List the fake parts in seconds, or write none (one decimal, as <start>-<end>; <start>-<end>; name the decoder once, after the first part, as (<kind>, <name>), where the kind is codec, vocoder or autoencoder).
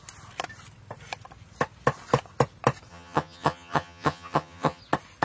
2.9-4.8 (vocoder, HiFi-GAN)